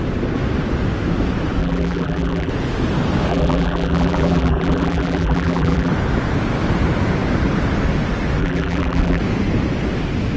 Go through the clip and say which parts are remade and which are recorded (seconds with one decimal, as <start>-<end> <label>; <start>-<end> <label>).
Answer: 0.0-1.6 recorded; 1.6-2.5 remade; 2.5-3.3 recorded; 3.3-5.9 remade; 5.9-8.4 recorded; 8.4-9.2 remade; 9.2-10.4 recorded